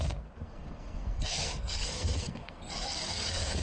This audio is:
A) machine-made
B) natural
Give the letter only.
A